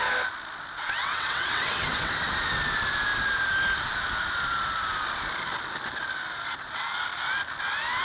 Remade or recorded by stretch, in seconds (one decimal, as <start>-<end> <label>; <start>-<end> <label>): 0.0-0.8 recorded; 0.8-2.1 remade; 2.1-8.0 recorded